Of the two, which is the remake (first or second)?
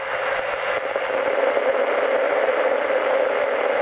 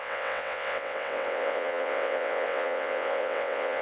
second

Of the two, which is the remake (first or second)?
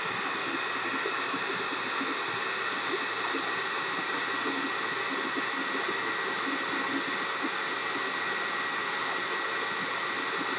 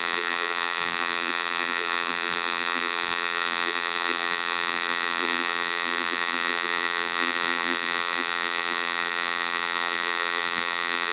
second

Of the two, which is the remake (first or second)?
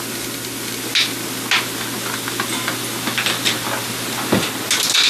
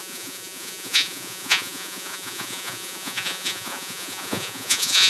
second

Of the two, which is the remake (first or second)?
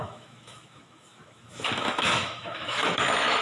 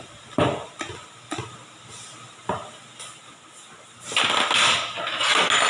first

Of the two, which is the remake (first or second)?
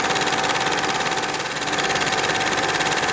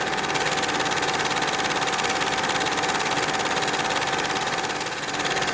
first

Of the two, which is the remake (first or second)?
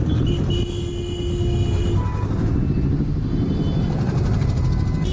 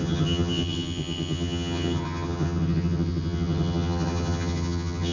second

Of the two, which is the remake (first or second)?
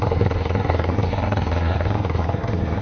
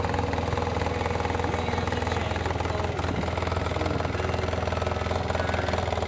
first